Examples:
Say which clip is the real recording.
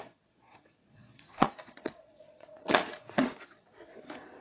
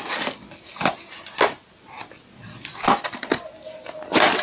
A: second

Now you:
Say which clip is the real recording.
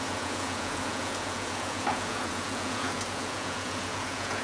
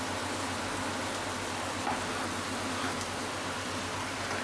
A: second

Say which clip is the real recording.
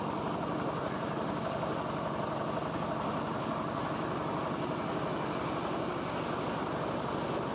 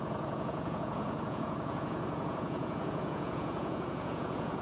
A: first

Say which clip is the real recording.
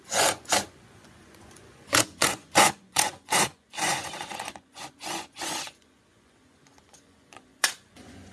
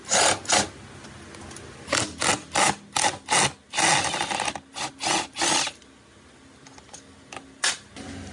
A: second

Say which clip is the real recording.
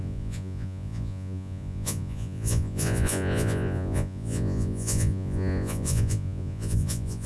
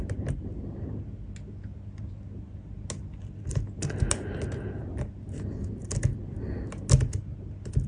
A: second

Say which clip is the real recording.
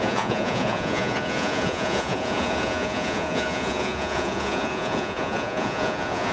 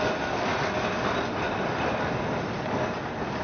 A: second